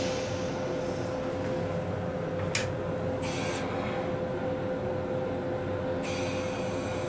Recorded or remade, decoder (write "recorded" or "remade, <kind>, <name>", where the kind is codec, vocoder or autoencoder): recorded